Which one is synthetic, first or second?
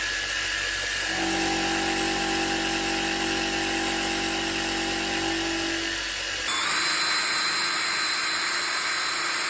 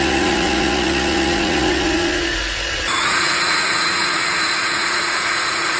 second